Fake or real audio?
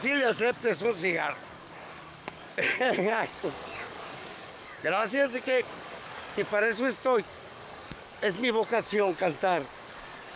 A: fake